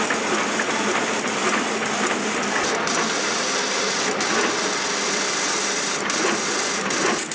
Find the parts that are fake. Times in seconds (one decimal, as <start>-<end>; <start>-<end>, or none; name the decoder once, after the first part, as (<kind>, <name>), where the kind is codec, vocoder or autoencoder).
none